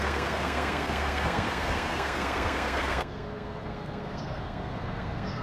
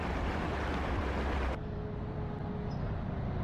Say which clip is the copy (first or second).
first